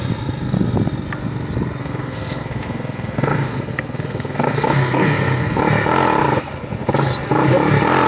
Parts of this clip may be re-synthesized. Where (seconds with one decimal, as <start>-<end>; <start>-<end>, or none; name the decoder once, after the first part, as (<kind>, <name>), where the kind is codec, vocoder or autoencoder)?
1.8-5.6 (codec, SNAC)